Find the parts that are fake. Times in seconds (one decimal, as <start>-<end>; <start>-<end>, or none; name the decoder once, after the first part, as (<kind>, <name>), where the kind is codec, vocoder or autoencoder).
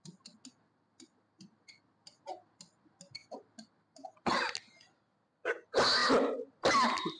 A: none